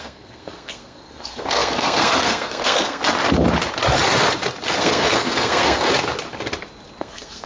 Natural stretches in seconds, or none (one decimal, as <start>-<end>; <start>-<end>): 3.0-4.8; 5.9-7.0